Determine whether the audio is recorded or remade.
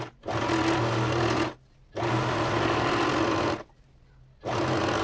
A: recorded